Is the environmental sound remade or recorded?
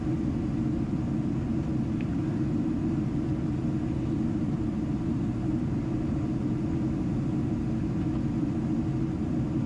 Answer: recorded